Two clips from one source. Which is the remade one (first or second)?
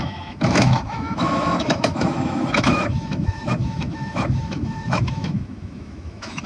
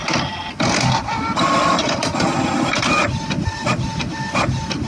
first